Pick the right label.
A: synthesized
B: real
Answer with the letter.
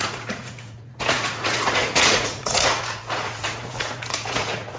A